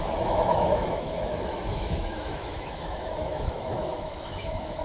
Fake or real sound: fake